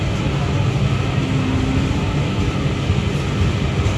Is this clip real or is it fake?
real